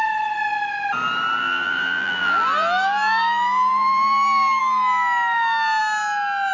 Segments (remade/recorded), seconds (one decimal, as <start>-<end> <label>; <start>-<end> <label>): 0.0-1.4 recorded; 1.4-4.6 remade; 4.6-6.5 recorded